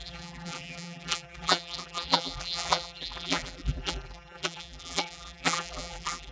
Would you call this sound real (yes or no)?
no